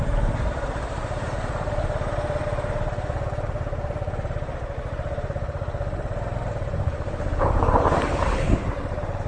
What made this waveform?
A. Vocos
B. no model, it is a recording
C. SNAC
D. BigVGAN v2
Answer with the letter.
D